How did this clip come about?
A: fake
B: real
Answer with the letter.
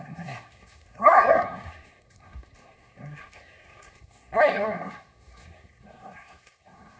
A